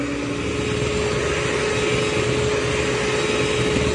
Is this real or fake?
real